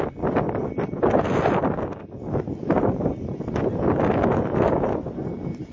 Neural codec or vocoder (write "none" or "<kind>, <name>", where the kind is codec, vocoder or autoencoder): none